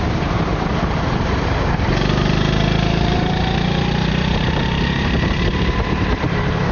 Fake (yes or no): yes